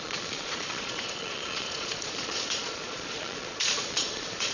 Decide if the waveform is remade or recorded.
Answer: remade